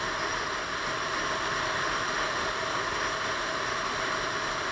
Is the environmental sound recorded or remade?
recorded